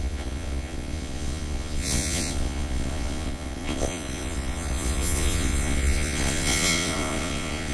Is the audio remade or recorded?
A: remade